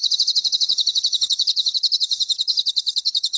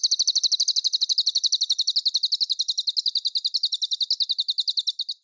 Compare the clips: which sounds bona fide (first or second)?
second